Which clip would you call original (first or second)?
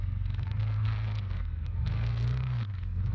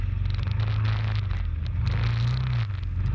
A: second